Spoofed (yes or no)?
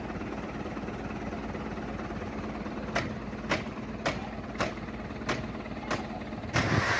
no